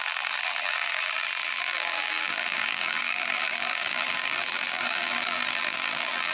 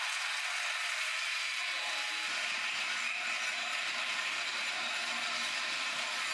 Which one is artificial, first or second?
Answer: first